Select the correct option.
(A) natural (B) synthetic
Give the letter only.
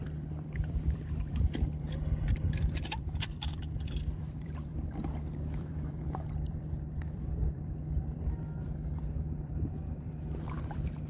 B